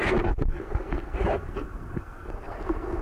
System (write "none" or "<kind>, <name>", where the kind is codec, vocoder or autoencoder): codec, SNAC